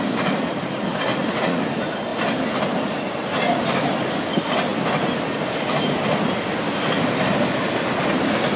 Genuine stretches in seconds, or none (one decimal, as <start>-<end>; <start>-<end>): 0.0-1.1; 1.6-8.6